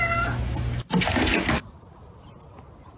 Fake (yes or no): no